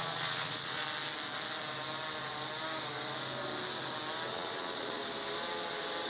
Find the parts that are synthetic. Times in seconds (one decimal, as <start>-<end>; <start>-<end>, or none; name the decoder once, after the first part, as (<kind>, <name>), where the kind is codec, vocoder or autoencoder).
0.0-0.8 (vocoder, Vocos); 4.3-5.0